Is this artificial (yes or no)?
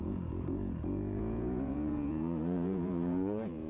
yes